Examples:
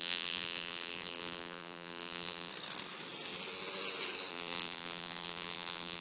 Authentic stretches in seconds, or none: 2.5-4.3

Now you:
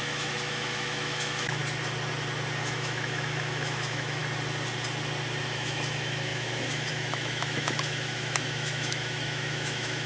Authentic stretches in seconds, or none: 1.6-2.6; 4.2-5.4

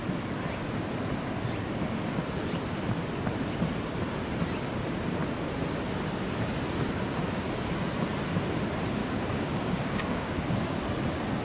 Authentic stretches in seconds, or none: 0.0-9.0; 10.4-11.4

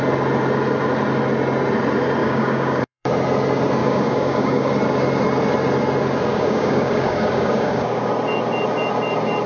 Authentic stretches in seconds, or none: 0.0-2.2; 3.1-3.8; 4.7-6.3; 8.1-9.5

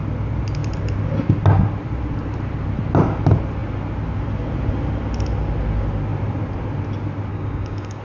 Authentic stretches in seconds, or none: 0.0-7.3